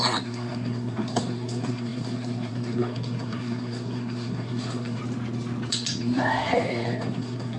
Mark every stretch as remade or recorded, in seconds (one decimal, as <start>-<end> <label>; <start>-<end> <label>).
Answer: 0.0-5.0 remade; 5.0-5.7 recorded; 5.7-7.6 remade